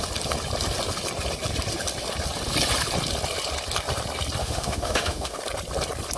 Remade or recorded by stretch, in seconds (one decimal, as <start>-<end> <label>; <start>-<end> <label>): 0.0-4.4 recorded; 4.4-5.4 remade; 5.4-6.2 recorded